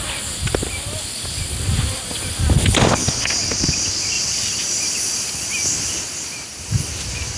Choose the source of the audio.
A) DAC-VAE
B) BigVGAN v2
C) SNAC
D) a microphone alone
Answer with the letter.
D